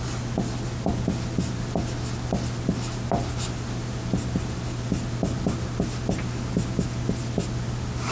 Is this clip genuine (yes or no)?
yes